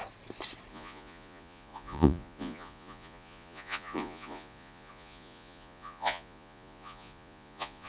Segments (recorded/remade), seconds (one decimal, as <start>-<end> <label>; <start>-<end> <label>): 0.0-0.7 recorded; 0.7-7.9 remade